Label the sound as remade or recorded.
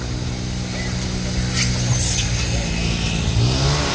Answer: recorded